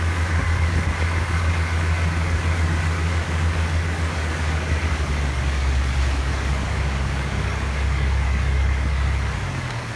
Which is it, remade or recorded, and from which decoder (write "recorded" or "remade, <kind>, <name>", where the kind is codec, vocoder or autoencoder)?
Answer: remade, codec, DAC